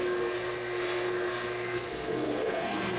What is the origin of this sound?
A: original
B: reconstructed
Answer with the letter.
B